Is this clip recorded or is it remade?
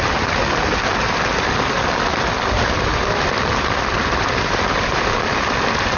recorded